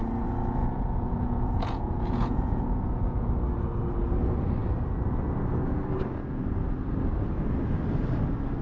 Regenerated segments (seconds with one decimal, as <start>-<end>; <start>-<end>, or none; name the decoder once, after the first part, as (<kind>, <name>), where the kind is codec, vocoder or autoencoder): 0.6-3.3 (vocoder, Vocos)